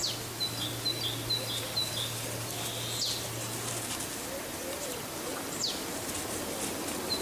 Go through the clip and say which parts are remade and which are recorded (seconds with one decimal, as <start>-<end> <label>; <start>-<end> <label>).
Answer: 0.0-7.2 recorded

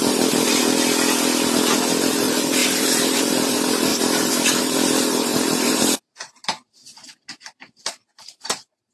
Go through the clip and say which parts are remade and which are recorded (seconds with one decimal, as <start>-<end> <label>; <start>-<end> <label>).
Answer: 0.0-0.6 remade; 0.6-2.0 recorded; 2.0-8.9 remade

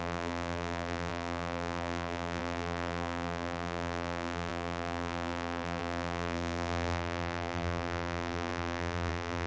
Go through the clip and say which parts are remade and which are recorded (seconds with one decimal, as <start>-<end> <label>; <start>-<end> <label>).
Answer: 0.0-9.5 remade

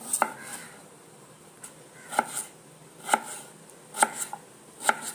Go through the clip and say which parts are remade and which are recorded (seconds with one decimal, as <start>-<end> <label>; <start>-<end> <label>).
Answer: 0.0-0.5 recorded; 0.5-1.8 remade; 1.8-5.1 recorded

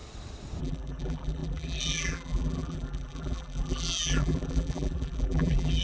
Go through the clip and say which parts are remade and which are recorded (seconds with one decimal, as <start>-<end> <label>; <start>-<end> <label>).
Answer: 0.0-0.6 recorded; 0.6-5.8 remade

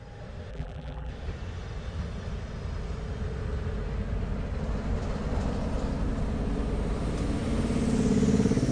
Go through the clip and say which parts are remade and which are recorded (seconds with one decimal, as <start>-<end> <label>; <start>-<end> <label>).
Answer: 0.0-0.5 recorded; 0.5-1.1 remade; 1.1-8.7 recorded